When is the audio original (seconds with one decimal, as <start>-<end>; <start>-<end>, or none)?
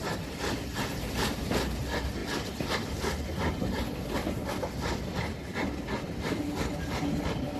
0.0-0.9; 1.8-7.6